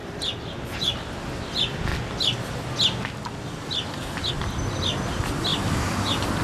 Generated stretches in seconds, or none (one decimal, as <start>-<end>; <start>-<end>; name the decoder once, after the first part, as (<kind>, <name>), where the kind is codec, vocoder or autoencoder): 0.0-1.3 (vocoder, BigVGAN v2)